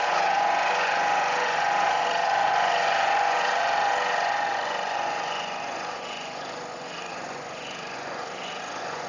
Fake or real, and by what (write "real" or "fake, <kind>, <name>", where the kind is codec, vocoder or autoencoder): fake, vocoder, Vocos